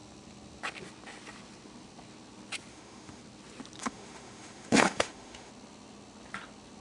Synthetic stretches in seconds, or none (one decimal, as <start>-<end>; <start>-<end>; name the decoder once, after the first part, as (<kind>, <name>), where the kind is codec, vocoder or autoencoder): 2.7-3.2 (autoencoder, DAC-VAE); 3.8-5.5